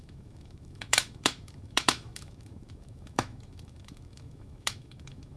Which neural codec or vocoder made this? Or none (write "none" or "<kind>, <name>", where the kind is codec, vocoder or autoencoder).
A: autoencoder, DAC-VAE